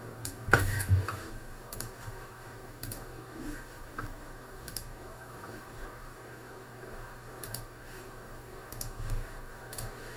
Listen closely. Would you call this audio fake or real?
fake